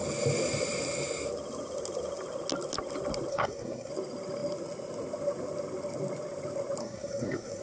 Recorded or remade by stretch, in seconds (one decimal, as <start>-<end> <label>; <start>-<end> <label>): 0.0-3.3 recorded; 3.3-3.9 remade; 3.9-6.8 recorded; 6.8-7.6 remade

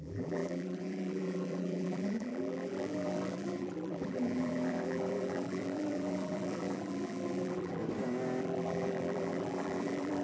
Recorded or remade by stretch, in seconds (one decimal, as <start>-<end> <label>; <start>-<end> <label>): 0.0-7.8 remade; 7.8-8.4 recorded; 8.4-10.2 remade

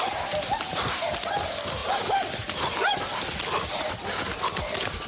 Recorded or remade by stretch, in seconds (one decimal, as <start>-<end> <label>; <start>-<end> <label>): 0.0-5.1 recorded